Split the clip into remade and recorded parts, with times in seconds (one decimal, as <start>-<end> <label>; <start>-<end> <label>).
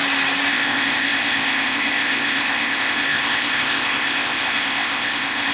0.0-0.5 recorded; 0.5-5.5 remade